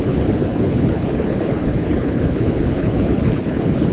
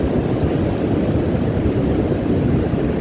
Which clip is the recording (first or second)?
second